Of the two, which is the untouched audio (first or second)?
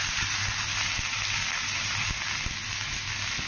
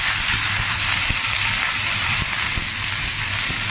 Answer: first